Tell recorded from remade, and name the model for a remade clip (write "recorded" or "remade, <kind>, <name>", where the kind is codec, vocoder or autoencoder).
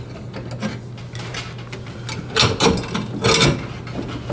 recorded